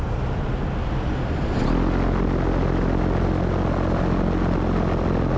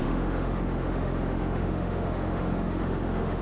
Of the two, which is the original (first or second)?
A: first